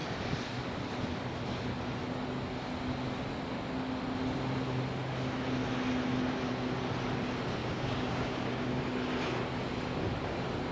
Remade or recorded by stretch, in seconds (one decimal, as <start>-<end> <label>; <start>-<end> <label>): 0.0-7.6 recorded; 7.6-8.8 remade; 8.8-10.7 recorded